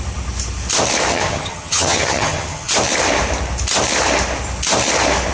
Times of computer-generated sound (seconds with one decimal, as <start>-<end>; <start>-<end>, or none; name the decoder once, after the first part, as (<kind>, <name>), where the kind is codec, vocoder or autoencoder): 1.1-2.7 (vocoder, HiFi-GAN)